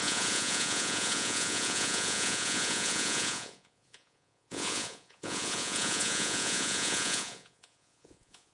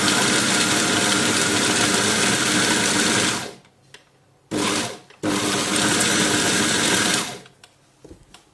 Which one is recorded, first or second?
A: second